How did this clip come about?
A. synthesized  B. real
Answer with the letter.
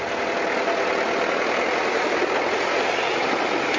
B